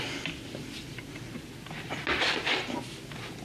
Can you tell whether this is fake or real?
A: real